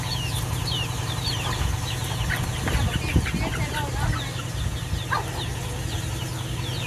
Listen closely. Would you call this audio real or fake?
real